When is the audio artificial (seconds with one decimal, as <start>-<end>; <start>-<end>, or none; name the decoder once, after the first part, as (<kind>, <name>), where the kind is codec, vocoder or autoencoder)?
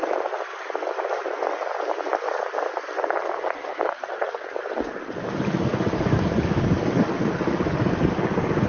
none